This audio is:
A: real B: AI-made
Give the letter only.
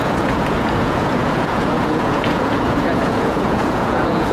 B